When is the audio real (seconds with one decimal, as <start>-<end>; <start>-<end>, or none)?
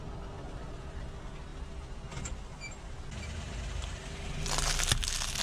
0.0-5.4